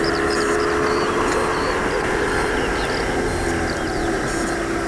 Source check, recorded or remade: recorded